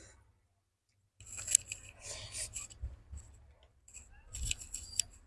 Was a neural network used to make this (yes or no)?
no